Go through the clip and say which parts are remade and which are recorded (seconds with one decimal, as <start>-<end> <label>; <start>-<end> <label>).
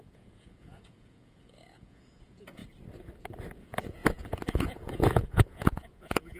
0.0-2.6 remade; 2.6-3.6 recorded; 3.6-6.4 remade